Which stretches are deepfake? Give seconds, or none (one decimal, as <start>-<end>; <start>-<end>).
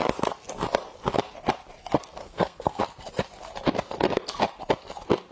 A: 2.2-2.8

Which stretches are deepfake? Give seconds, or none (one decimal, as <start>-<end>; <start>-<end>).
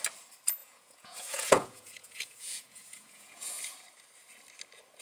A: 0.6-3.6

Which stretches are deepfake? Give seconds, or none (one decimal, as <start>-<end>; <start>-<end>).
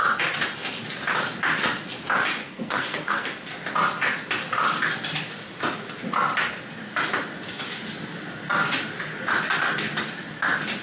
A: 2.4-3.4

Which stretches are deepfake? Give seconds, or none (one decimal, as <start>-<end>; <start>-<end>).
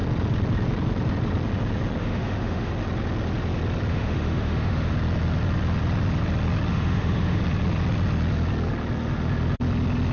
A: 2.0-2.7; 3.9-4.9; 6.7-7.4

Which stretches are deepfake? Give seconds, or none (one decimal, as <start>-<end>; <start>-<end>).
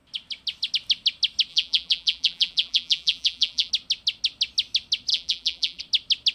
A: 1.5-3.7; 5.1-5.8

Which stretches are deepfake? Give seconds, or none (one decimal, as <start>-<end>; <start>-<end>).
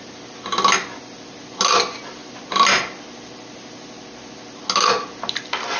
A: none